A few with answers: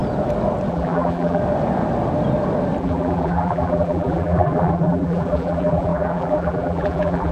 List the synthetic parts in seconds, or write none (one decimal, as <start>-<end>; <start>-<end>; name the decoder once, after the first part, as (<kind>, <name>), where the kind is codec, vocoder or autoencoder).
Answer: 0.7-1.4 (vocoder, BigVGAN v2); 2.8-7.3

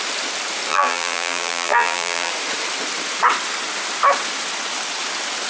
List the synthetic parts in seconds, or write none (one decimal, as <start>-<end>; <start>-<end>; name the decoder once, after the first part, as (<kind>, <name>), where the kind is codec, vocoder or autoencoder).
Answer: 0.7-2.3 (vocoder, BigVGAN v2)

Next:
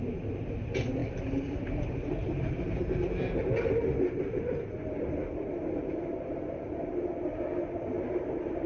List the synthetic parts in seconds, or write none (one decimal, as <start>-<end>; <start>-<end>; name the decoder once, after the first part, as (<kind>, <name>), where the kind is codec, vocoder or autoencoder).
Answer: 0.0-8.7 (vocoder, BigVGAN v2)